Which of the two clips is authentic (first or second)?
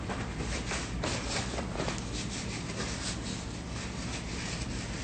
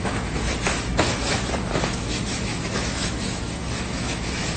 first